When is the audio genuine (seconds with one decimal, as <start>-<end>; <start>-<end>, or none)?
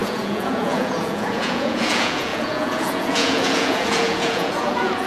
none